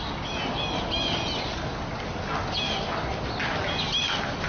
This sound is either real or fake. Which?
real